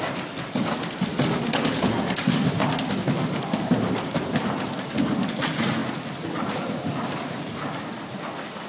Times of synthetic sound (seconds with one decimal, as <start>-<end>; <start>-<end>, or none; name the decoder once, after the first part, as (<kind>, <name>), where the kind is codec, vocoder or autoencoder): none